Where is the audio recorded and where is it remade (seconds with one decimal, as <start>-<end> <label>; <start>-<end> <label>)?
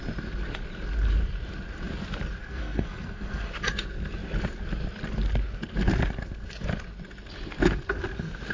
0.0-2.4 recorded; 2.4-3.5 remade; 3.5-8.5 recorded